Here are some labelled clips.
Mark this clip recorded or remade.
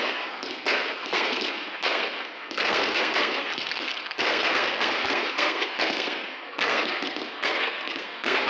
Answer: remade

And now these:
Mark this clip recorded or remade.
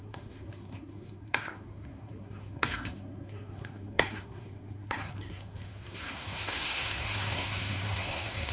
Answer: remade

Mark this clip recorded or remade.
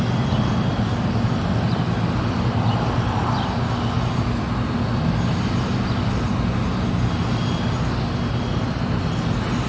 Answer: recorded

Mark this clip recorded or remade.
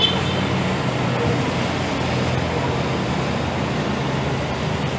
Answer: recorded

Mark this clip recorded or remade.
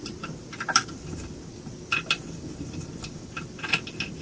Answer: recorded